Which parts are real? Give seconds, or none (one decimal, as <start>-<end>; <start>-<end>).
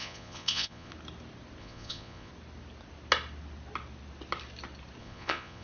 0.9-1.6; 2.3-5.0